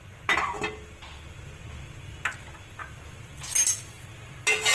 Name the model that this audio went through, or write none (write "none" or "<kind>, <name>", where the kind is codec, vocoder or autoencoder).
none